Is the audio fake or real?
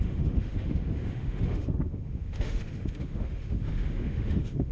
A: fake